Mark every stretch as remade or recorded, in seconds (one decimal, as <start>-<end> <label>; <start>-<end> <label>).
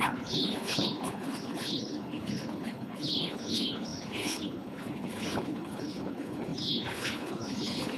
0.0-8.0 remade